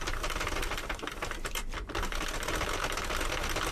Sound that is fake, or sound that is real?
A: fake